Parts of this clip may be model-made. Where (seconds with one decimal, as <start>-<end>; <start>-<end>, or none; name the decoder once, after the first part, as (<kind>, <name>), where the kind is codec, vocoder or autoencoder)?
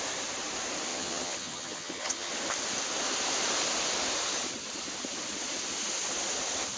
0.9-2.3 (vocoder, HiFi-GAN)